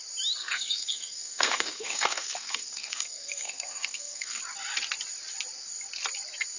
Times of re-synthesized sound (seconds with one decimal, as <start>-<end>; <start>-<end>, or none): 0.4-4.4